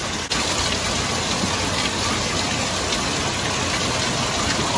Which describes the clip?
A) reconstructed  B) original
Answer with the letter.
B